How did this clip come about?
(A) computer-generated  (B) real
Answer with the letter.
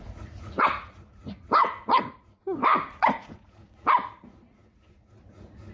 A